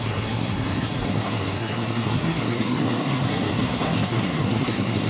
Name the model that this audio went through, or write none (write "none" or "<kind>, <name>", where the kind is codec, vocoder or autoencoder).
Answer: codec, SNAC